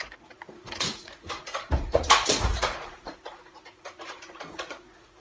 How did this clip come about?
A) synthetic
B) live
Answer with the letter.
A